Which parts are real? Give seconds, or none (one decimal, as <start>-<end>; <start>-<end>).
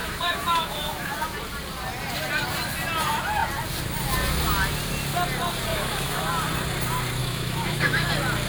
1.1-5.7; 6.3-7.2; 8.1-8.5